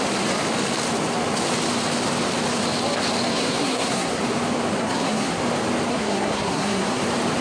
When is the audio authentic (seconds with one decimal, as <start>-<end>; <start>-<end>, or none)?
0.0-3.3; 4.2-4.8; 5.4-5.9; 7.0-7.4